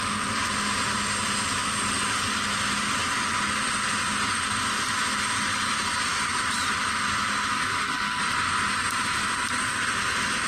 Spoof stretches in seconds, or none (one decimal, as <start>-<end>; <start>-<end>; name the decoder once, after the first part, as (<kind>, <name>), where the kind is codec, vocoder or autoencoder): 7.5-8.2 (codec, SNAC)